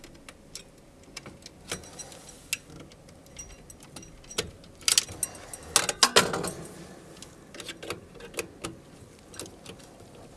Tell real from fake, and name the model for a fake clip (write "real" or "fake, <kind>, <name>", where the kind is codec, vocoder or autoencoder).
real